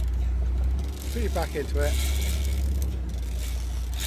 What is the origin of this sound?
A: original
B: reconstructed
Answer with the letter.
A